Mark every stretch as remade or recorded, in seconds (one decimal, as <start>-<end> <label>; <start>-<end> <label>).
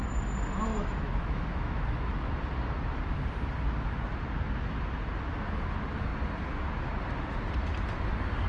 0.0-0.7 recorded; 0.7-2.3 remade; 2.3-8.5 recorded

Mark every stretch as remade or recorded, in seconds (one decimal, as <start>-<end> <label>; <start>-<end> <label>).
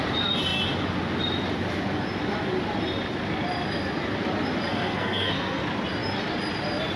0.0-4.7 recorded; 4.7-5.6 remade; 5.6-7.0 recorded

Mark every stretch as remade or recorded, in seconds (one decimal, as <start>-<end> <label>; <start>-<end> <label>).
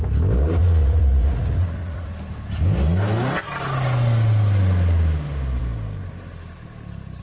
0.0-0.6 recorded; 0.6-2.1 remade; 2.1-7.2 recorded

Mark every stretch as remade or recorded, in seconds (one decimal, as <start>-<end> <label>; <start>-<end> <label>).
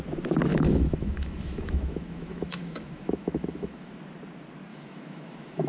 0.0-0.5 recorded; 0.5-3.9 remade; 3.9-4.7 recorded; 4.7-5.7 remade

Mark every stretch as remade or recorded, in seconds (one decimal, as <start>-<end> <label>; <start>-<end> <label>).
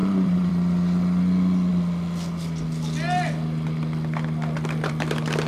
0.0-0.5 remade; 0.5-5.5 recorded